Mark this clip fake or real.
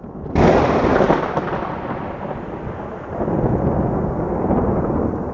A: real